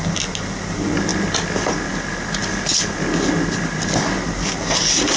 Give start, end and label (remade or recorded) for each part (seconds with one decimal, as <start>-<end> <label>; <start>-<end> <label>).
0.0-5.2 recorded